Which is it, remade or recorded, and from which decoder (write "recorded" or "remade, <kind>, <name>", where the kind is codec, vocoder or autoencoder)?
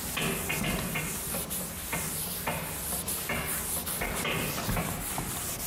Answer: recorded